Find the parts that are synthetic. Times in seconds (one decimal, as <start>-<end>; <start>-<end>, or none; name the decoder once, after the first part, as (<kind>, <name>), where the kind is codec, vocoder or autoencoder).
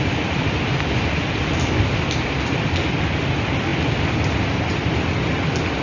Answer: none